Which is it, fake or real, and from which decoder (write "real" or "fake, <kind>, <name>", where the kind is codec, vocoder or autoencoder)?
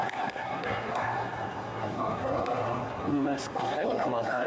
fake, codec, SNAC